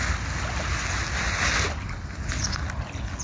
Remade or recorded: recorded